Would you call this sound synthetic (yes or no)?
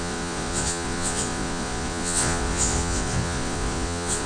yes